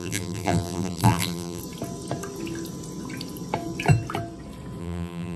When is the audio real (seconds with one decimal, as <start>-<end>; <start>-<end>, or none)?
1.6-4.8